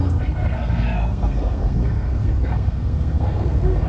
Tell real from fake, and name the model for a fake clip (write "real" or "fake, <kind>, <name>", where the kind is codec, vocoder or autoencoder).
fake, codec, SNAC